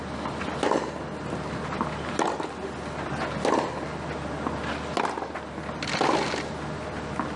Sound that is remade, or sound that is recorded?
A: recorded